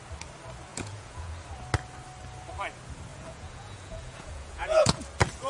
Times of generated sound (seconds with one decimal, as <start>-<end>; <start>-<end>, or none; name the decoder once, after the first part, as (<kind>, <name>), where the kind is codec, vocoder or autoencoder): 0.7-1.3 (vocoder, Vocos); 3.1-5.0